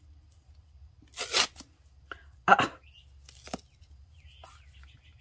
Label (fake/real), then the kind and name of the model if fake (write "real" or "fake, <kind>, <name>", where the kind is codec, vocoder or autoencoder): real